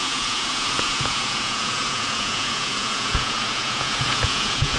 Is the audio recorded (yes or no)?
no